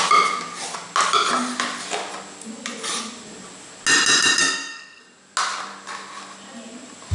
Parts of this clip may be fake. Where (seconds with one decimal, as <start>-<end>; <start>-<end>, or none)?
4.4-5.0

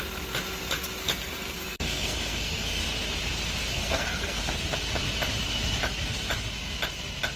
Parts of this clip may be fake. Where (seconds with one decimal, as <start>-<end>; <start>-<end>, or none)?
1.0-2.8; 3.7-4.4

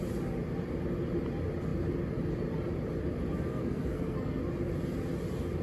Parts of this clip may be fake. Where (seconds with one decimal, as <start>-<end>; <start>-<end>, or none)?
3.5-4.4